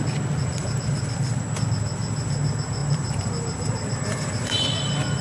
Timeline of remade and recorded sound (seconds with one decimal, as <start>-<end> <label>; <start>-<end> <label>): 0.0-0.5 recorded; 0.5-1.4 remade; 1.4-2.8 recorded; 2.8-5.2 remade